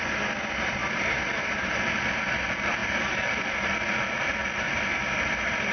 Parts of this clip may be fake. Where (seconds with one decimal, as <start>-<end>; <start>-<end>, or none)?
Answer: 0.8-2.1